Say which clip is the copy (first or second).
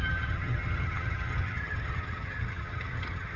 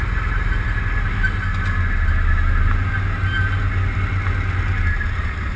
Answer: first